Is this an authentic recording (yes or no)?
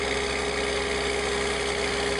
yes